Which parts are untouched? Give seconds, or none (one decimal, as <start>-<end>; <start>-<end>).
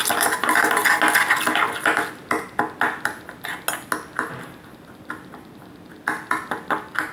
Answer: 0.0-7.1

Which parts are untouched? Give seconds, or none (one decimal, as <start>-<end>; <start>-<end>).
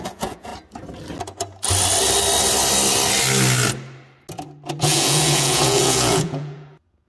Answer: 0.5-4.8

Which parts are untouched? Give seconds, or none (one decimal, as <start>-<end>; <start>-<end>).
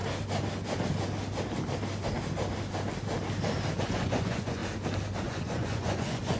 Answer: 0.0-3.8; 4.6-5.2